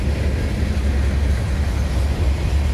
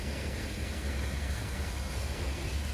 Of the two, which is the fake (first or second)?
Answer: second